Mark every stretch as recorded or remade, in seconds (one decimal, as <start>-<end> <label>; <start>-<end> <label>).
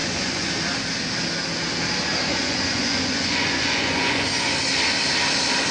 0.0-0.5 remade; 0.5-2.3 recorded; 2.3-4.5 remade; 4.5-5.7 recorded